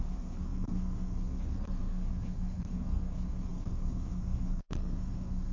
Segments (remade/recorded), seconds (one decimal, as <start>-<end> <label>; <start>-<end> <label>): 0.0-5.5 remade